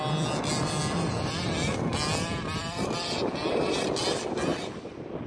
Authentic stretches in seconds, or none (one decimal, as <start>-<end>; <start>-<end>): 0.0-5.3